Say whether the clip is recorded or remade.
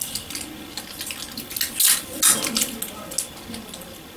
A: recorded